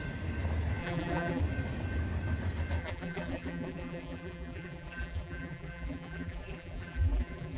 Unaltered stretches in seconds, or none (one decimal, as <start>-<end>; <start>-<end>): 0.0-0.8; 1.4-2.8

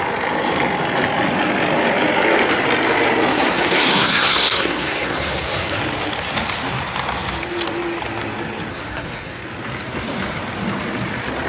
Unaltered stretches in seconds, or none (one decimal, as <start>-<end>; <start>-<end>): 0.0-3.3; 5.8-8.7; 9.4-11.5